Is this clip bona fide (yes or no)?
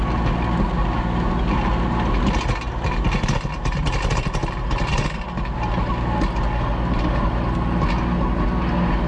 yes